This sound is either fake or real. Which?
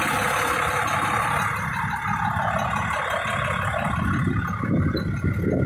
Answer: real